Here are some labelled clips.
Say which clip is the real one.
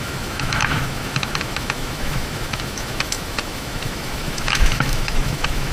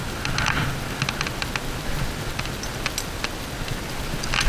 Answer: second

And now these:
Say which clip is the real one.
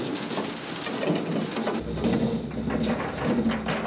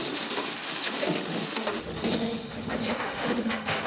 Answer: first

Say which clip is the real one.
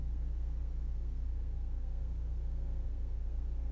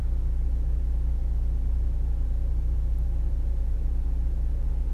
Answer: second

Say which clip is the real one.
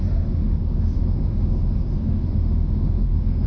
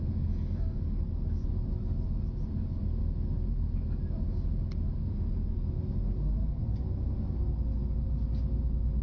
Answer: second